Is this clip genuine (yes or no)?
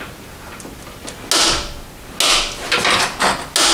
yes